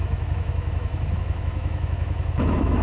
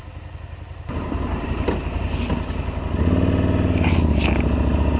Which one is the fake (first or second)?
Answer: first